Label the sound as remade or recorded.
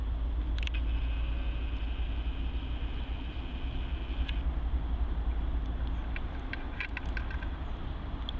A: recorded